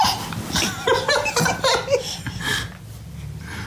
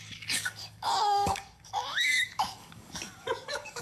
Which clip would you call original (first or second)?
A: first